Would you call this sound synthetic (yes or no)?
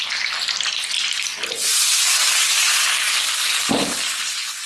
no